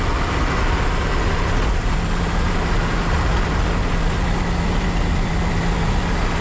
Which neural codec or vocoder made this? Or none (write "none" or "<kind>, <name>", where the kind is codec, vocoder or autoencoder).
none